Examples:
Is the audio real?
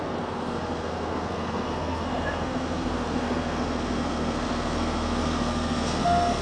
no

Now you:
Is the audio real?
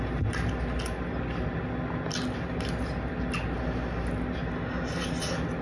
yes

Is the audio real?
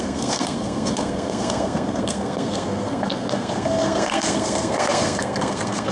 no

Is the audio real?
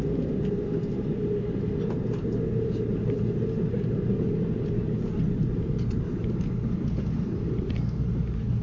yes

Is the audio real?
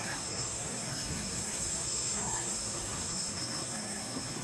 no